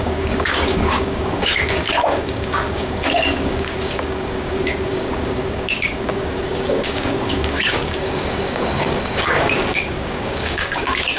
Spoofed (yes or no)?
yes